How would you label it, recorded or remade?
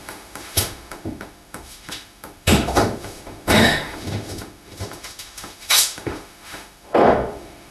remade